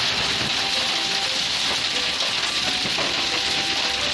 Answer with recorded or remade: recorded